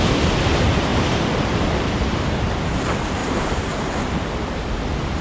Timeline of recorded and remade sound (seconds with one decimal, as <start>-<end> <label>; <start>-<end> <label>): 0.0-0.9 recorded; 0.9-2.6 remade; 2.6-3.2 recorded; 3.2-4.6 remade; 4.6-5.2 recorded